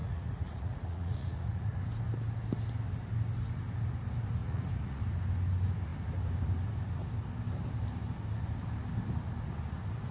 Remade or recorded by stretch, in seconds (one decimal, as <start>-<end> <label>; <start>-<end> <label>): 0.0-1.8 remade; 1.8-4.4 recorded; 4.4-5.0 remade; 5.0-10.1 recorded